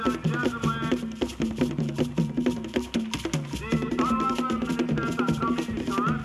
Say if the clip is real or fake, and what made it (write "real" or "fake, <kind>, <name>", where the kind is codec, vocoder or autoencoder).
real